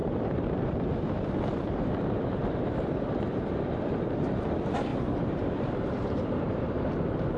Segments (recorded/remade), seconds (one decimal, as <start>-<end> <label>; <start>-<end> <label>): 0.0-4.1 remade; 4.1-4.9 recorded; 4.9-6.9 remade; 6.9-7.4 recorded